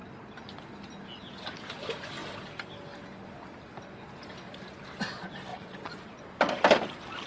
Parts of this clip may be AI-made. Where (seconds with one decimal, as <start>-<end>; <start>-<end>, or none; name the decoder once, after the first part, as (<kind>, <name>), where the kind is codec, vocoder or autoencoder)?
5.5-6.2 (vocoder, Vocos)